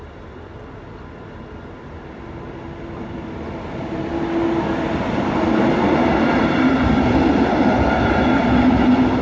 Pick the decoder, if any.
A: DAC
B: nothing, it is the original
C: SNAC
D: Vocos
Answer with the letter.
B